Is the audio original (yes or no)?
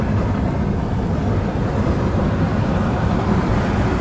yes